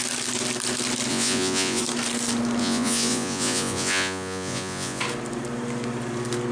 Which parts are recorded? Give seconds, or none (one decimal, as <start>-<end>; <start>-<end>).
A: 0.0-1.1; 1.8-2.6; 5.0-6.5